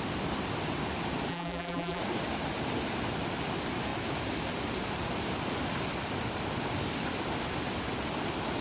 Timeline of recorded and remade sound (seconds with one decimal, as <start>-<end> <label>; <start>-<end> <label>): 0.0-1.3 recorded; 1.3-2.0 remade; 2.0-8.6 recorded